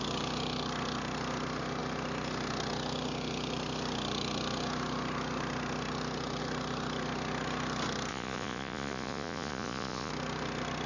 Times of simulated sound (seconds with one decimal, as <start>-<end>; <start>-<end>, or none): 8.1-10.1